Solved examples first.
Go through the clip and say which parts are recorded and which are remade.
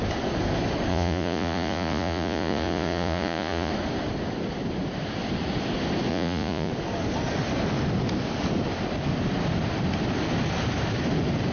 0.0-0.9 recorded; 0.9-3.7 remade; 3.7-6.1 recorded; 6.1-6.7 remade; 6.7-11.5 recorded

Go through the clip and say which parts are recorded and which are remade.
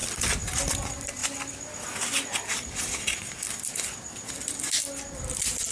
0.0-5.7 recorded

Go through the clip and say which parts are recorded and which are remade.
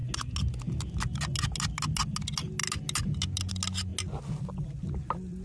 0.0-5.4 recorded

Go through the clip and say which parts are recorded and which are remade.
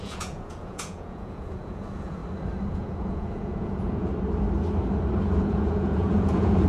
0.0-2.2 remade; 2.2-2.7 recorded; 2.7-4.1 remade; 4.1-5.2 recorded; 5.2-6.7 remade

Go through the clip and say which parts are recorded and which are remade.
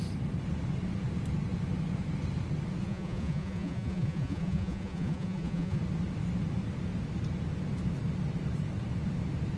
0.0-2.8 recorded; 2.8-5.8 remade; 5.8-9.6 recorded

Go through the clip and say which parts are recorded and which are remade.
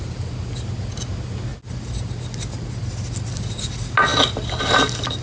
0.0-5.2 recorded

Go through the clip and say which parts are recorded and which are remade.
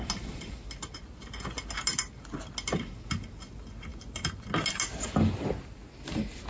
0.0-6.5 recorded